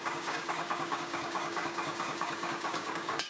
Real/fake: fake